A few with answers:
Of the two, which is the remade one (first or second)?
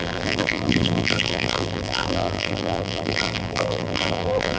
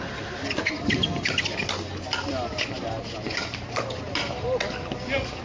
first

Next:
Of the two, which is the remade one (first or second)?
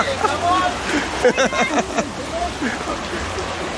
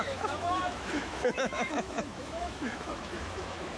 second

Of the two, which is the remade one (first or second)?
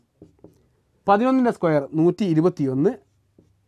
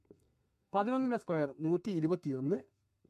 second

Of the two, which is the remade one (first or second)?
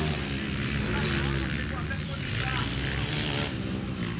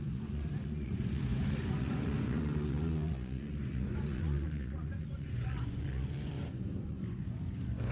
second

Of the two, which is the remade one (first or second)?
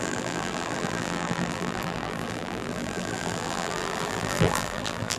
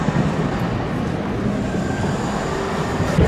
first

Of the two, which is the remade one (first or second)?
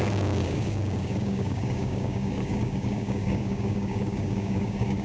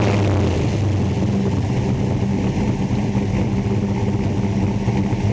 first